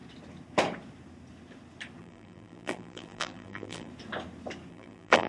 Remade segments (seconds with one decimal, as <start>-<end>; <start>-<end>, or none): 2.0-3.9; 4.7-5.3